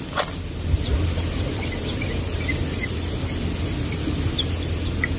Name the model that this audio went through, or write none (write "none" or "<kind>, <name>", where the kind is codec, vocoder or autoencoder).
none